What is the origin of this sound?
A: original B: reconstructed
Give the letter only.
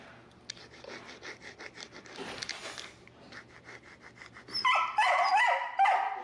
A